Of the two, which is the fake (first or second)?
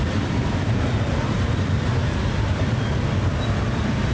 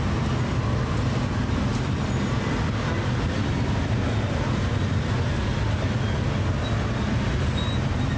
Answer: first